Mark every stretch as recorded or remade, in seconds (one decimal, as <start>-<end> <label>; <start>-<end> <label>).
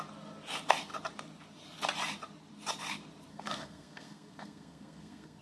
0.0-3.3 recorded; 3.3-5.4 remade